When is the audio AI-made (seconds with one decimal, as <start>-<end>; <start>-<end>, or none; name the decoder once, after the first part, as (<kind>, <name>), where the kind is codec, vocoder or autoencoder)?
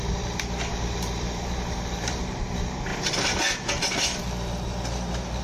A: 0.7-2.2 (vocoder, BigVGAN v2); 2.9-3.4